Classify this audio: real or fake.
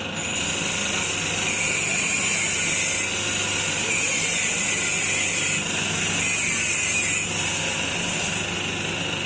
real